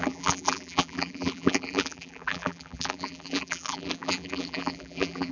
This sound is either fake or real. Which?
fake